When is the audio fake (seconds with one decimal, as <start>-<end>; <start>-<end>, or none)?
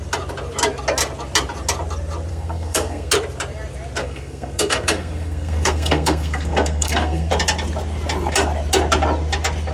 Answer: 2.3-3.1; 4.0-7.3